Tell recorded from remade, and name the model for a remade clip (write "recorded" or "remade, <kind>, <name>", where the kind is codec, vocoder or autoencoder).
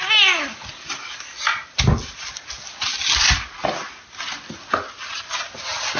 recorded